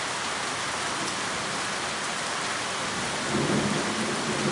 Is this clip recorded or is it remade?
recorded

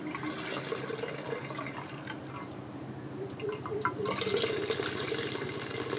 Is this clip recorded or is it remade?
recorded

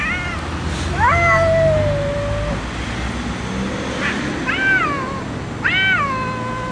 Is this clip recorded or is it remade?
recorded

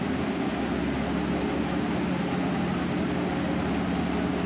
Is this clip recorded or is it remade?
recorded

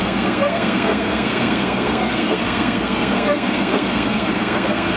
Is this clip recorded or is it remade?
remade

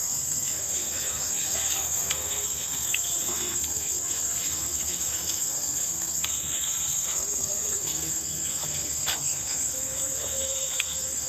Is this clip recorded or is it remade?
remade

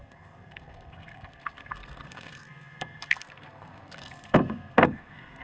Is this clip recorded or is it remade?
remade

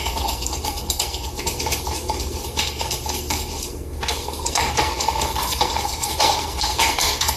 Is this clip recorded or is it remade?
remade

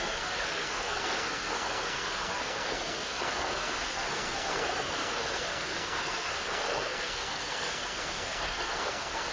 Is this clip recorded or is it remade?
remade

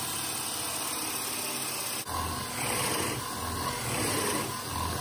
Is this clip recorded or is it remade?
recorded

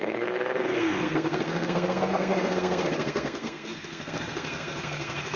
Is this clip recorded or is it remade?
remade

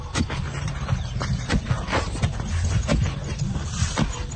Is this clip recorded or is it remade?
recorded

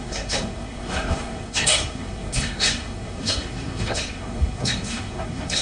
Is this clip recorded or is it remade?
remade